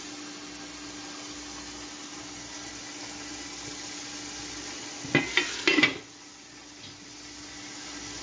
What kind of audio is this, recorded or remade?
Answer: recorded